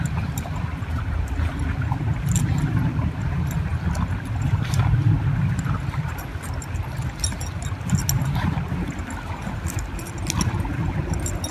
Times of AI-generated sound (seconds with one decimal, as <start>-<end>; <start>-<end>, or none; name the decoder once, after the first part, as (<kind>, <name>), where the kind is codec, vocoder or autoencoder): none